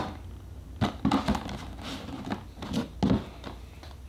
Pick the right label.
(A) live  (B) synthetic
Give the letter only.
A